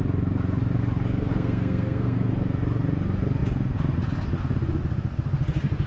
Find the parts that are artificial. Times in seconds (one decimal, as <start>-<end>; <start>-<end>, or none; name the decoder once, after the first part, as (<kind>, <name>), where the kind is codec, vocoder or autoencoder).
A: 1.3-2.3 (codec, SNAC)